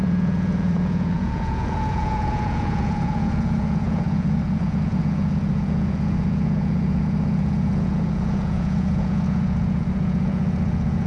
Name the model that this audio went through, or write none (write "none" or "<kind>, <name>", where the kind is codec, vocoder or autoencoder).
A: vocoder, Vocos